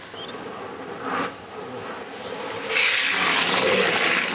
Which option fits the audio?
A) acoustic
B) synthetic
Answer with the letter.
A